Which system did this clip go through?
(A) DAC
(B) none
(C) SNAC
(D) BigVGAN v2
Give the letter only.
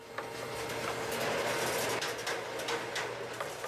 B